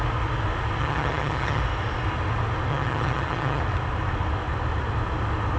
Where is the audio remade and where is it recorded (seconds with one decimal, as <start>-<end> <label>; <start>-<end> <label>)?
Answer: 0.0-0.8 recorded; 0.8-1.6 remade; 1.6-2.7 recorded; 2.7-3.6 remade; 3.6-5.6 recorded